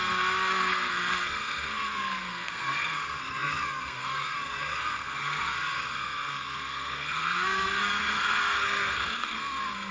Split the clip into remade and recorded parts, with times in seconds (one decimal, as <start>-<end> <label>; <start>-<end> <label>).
0.0-9.9 remade